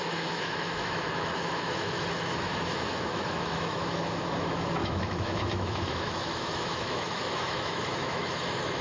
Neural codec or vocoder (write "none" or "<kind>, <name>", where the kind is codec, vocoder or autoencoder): autoencoder, DAC-VAE